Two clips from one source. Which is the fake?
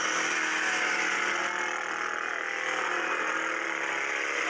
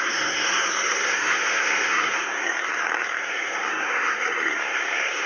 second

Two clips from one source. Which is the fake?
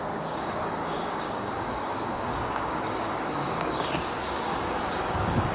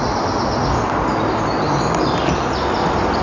first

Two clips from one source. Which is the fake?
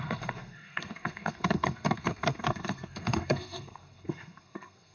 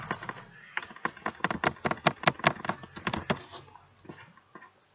first